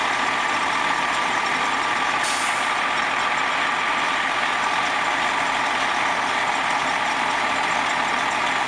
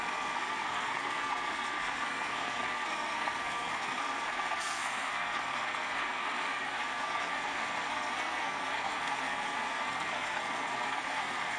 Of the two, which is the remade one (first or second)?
second